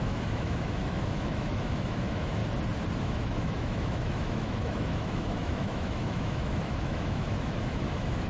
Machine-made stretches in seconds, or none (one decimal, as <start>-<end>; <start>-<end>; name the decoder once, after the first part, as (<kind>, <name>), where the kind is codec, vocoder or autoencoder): 0.0-2.4 (autoencoder, DAC-VAE); 3.0-8.3